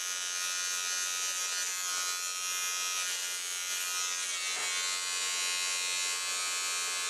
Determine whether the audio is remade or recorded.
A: recorded